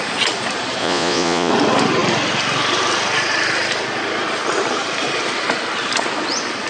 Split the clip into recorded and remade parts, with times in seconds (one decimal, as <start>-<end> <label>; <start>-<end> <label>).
0.0-0.8 recorded; 0.8-1.5 remade; 1.5-6.7 recorded